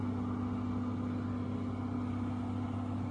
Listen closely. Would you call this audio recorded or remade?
recorded